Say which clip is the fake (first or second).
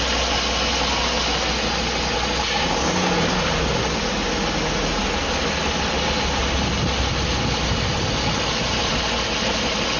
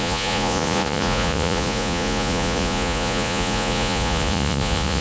second